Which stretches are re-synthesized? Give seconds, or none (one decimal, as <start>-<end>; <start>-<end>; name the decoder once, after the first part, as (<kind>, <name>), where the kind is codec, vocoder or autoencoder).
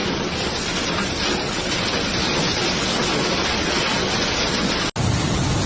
none